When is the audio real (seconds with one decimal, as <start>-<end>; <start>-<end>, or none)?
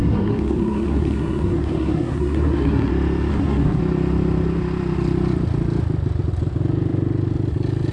2.9-3.3; 3.8-7.9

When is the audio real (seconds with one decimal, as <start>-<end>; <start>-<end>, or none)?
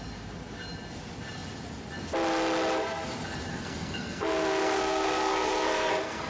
0.0-3.5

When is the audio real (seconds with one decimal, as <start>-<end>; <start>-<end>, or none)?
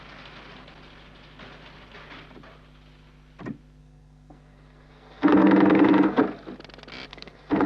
0.0-3.8; 6.2-7.1